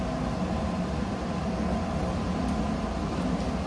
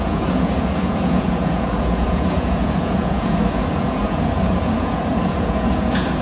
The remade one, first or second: second